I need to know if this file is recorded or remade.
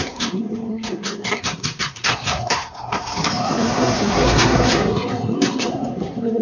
remade